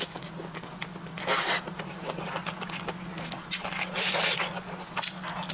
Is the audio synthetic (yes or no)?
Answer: no